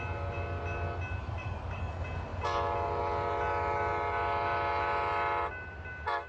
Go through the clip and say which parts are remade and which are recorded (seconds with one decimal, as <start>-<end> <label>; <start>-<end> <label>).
0.0-1.2 recorded; 1.2-1.9 remade; 1.9-6.3 recorded